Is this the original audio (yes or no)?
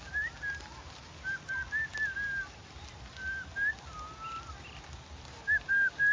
yes